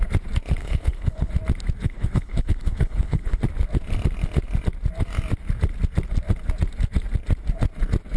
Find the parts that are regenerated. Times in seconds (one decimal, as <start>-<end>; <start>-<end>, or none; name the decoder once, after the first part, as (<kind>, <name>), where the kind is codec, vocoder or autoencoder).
0.6-1.3 (codec, HILCodec); 1.8-3.4